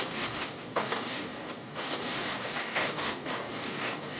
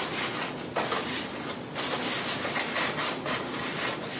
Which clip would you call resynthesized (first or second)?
first